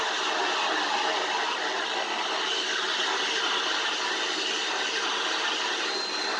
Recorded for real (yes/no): yes